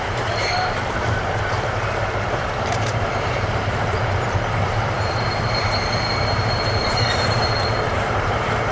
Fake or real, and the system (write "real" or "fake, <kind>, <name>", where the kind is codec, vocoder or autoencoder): fake, vocoder, BigVGAN v2